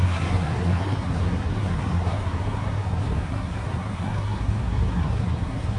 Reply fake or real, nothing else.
fake